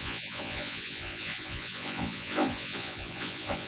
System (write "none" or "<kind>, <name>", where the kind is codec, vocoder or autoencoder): vocoder, Vocos